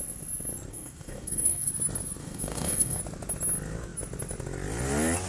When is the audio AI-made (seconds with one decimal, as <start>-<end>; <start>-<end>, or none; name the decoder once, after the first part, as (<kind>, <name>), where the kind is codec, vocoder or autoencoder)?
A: 0.7-1.7 (codec, DAC); 2.2-3.0